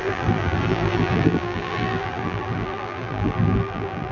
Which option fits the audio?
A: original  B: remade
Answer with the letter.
B